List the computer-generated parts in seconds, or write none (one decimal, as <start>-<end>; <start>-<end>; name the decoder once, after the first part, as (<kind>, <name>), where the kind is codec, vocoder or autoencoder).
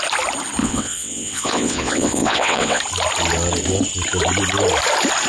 0.6-2.8 (vocoder, WaveNeXt)